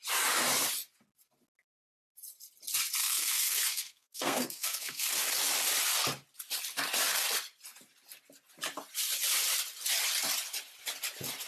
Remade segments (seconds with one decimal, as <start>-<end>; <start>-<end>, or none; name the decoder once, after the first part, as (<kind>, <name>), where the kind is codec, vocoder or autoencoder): 3.0-5.1 (codec, SNAC)